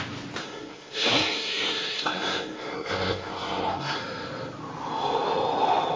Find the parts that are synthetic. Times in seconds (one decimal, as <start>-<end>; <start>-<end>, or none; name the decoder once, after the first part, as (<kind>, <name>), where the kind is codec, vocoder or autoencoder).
0.4-4.0 (codec, SNAC)